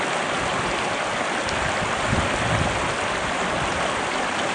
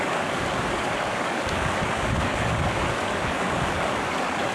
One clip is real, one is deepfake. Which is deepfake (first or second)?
second